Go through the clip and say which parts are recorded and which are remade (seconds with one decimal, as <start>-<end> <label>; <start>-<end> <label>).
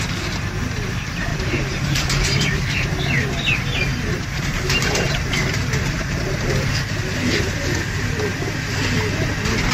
0.0-1.3 recorded; 1.3-2.9 remade; 2.9-3.9 recorded; 3.9-6.5 remade; 6.5-9.7 recorded